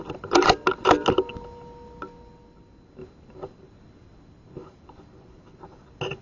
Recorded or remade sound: recorded